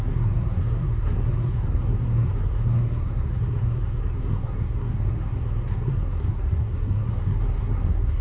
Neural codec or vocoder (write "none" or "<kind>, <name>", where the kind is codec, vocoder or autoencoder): codec, SNAC